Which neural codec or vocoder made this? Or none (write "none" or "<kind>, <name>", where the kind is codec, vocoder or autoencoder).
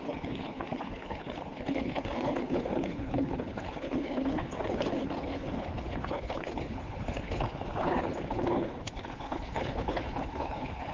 codec, HILCodec